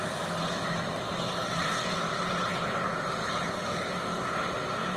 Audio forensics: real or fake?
real